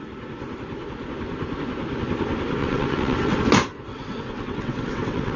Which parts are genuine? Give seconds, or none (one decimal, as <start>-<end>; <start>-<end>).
0.0-2.6; 3.4-3.9